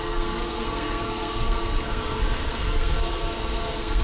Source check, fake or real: fake